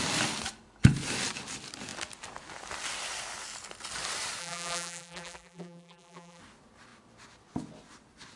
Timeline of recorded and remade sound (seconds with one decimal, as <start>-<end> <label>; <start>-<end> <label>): 0.0-4.4 recorded; 4.4-6.4 remade; 6.4-8.4 recorded